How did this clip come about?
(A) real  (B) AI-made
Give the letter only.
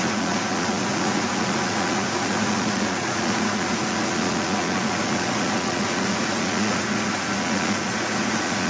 B